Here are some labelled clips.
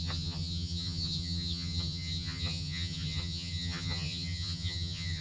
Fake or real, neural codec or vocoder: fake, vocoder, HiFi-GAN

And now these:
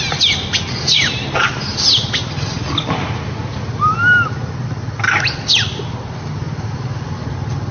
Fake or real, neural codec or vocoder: real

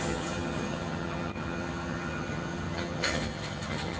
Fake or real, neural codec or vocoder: fake, vocoder, HiFi-GAN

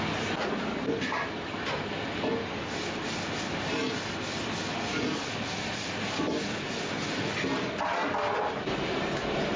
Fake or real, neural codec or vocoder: real